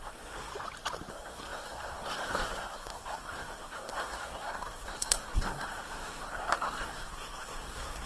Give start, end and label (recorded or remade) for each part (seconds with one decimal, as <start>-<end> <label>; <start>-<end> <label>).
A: 0.0-0.5 remade; 0.5-1.1 recorded; 1.1-8.1 remade